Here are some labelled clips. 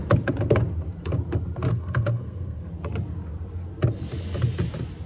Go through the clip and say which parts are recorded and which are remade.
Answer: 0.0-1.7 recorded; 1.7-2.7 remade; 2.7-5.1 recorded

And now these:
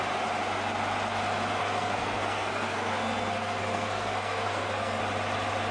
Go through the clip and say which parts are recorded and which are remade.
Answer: 0.0-1.6 recorded; 1.6-5.0 remade; 5.0-5.7 recorded

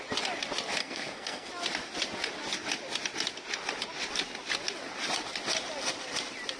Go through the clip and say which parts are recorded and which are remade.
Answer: 0.0-0.8 recorded; 0.8-1.5 remade; 1.5-6.6 recorded